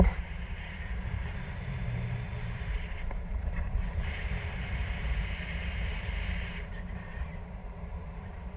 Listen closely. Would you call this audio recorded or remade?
remade